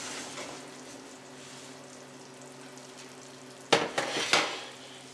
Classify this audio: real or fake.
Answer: real